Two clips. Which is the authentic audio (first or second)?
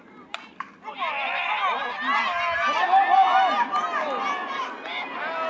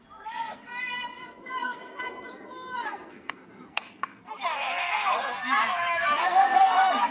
first